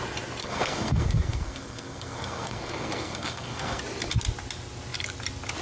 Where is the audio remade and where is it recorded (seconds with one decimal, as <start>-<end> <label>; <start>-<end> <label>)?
0.0-0.4 recorded; 0.4-3.8 remade; 3.8-5.6 recorded